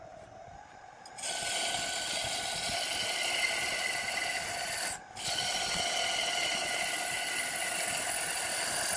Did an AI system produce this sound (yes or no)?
no